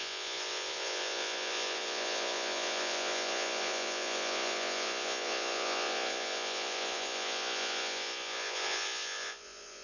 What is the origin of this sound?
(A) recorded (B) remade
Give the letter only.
B